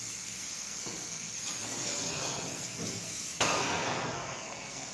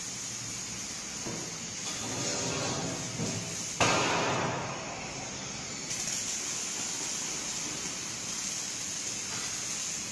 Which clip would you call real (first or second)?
second